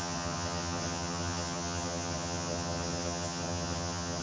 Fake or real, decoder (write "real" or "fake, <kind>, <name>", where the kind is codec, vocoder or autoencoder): fake, vocoder, HiFi-GAN